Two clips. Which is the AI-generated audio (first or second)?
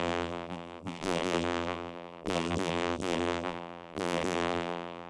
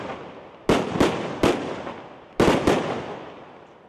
first